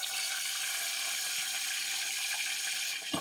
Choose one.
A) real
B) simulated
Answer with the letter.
A